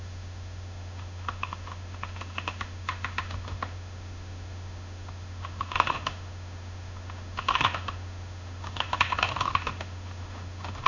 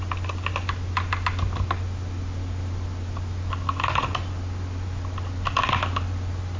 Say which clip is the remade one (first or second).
first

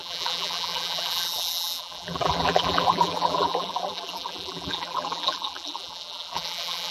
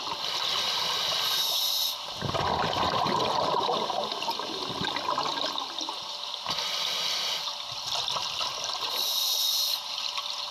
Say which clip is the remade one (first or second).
first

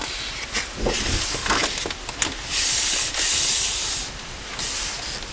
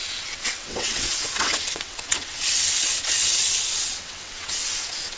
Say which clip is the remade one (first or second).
second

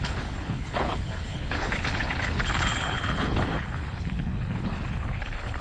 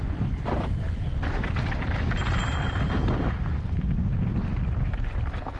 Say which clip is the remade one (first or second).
first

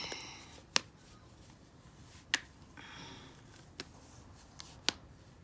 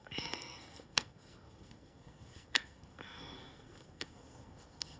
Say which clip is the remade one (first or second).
second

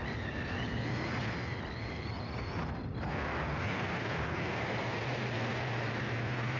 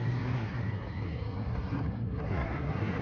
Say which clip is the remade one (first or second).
second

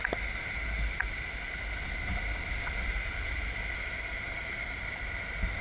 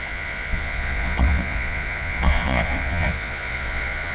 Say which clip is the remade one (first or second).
second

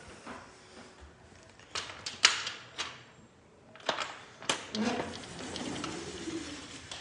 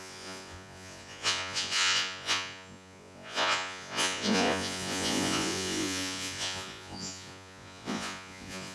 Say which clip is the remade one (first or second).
second